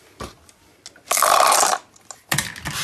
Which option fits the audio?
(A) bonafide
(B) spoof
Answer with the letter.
A